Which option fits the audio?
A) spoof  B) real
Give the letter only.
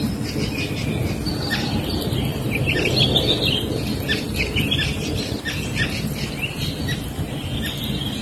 B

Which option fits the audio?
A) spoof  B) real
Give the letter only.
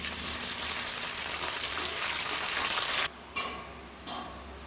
A